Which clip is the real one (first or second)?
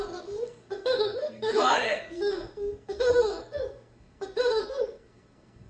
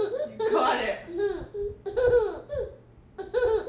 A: second